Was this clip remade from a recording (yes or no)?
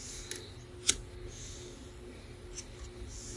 no